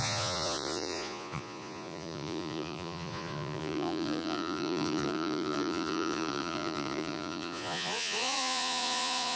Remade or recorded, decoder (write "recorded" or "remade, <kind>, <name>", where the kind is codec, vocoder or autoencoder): remade, vocoder, Vocos